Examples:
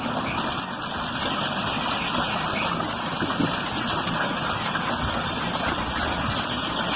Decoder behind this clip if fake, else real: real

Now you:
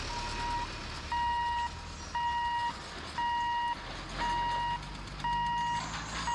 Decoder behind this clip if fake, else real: real